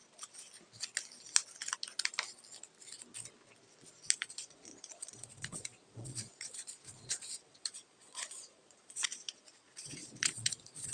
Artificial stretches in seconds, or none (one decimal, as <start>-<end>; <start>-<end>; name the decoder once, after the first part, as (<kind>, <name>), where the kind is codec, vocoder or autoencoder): 4.2-10.9 (vocoder, Vocos)